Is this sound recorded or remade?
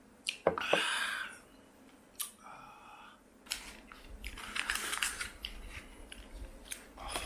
recorded